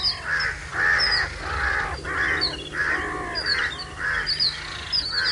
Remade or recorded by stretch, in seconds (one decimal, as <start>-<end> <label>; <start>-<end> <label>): 0.0-5.3 recorded